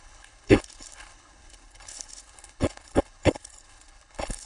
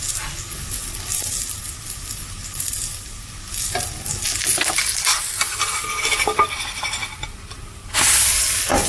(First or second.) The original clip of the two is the second